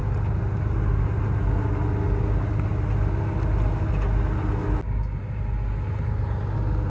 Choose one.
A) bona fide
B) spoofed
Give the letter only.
A